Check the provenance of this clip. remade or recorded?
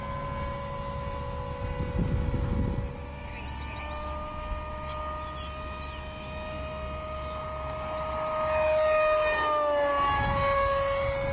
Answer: recorded